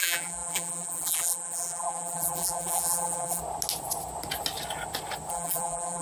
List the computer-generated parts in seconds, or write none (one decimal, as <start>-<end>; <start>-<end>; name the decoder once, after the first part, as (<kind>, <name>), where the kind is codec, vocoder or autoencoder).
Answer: 0.0-3.4 (vocoder, BigVGAN v2); 5.3-6.0